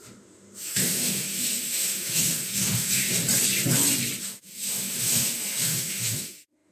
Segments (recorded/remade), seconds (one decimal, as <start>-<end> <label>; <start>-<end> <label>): 0.0-3.2 remade; 3.2-4.2 recorded; 4.2-6.7 remade